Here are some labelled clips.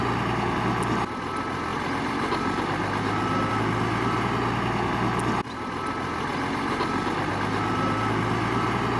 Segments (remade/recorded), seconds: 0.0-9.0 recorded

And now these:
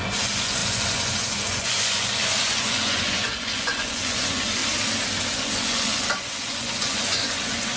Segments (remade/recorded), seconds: 0.0-4.6 remade; 4.6-5.3 recorded; 5.3-7.8 remade